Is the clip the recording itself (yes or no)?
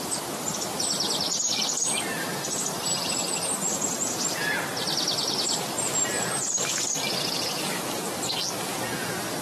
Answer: yes